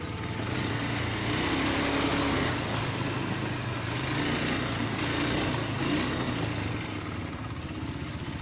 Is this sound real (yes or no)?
yes